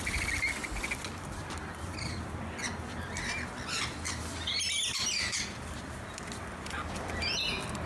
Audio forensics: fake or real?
real